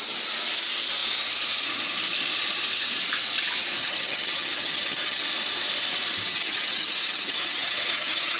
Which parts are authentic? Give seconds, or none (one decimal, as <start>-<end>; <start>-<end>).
0.0-3.8; 5.2-6.3